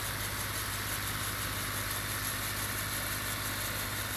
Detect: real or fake real